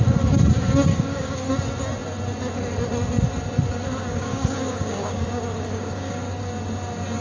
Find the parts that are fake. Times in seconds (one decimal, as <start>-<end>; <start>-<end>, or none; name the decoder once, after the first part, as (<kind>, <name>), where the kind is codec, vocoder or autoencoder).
0.9-1.5 (codec, DAC); 4.1-6.4